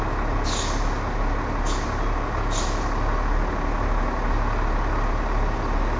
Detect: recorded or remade recorded